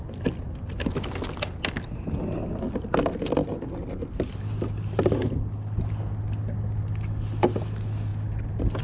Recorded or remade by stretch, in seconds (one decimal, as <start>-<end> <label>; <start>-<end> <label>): 0.0-8.8 recorded